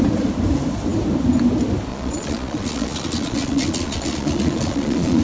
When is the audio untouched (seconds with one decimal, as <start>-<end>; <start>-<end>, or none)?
0.0-1.9